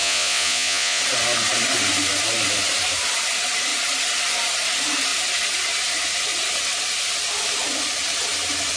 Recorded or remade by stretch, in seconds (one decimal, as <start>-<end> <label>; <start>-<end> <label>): 0.0-1.0 remade; 1.0-8.8 recorded

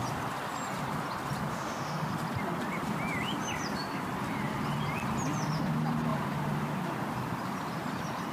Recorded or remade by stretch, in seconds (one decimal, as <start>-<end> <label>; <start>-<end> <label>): 0.0-1.5 recorded; 1.5-2.1 remade; 2.1-8.3 recorded

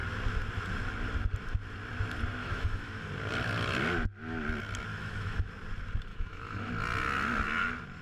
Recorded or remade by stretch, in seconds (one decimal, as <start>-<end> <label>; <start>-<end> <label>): 0.0-2.4 recorded; 2.4-3.1 remade; 3.1-4.9 recorded; 4.9-5.5 remade; 5.5-6.1 recorded; 6.1-6.7 remade; 6.7-8.0 recorded

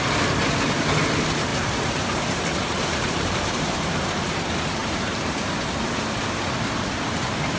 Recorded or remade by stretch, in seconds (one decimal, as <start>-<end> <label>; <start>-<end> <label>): 0.0-1.5 recorded; 1.5-4.3 remade; 4.3-4.8 recorded; 4.8-5.5 remade; 5.5-7.6 recorded

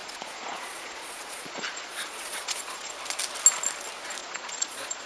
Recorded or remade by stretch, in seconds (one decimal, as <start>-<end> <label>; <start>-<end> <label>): 0.0-2.9 remade; 2.9-4.2 recorded; 4.2-5.1 remade

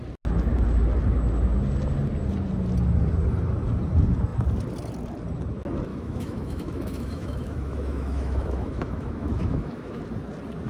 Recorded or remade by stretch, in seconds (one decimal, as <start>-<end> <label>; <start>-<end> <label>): 0.0-5.9 recorded; 5.9-10.0 remade; 10.0-10.7 recorded